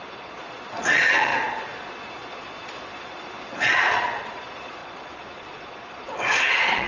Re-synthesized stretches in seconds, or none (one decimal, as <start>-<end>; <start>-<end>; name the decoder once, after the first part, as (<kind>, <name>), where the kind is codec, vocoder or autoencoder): 0.0-6.9 (vocoder, Vocos)